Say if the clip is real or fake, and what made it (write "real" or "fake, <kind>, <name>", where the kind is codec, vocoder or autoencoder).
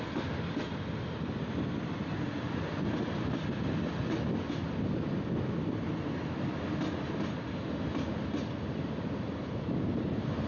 real